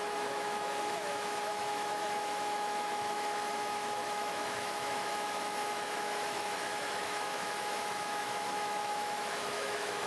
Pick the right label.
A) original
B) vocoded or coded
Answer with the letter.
B